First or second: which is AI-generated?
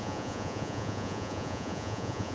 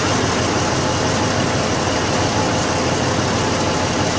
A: first